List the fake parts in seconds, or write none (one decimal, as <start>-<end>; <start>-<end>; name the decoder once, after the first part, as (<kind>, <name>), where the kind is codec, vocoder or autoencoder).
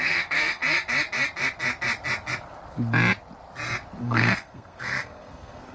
0.0-0.6 (codec, SNAC); 4.0-5.7